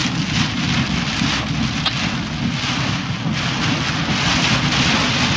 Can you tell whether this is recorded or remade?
recorded